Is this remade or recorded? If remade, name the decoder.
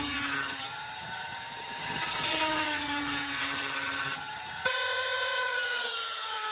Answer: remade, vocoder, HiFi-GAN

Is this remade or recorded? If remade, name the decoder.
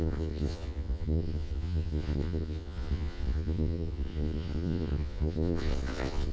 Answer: remade, vocoder, Vocos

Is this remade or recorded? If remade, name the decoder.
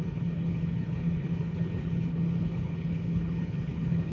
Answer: remade, codec, HILCodec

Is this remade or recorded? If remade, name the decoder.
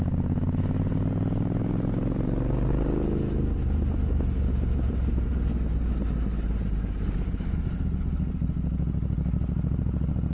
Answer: recorded